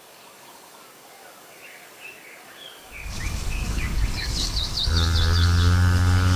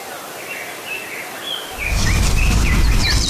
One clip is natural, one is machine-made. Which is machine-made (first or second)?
first